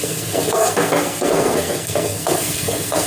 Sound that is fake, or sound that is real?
fake